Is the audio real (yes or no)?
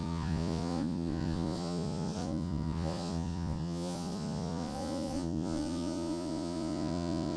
no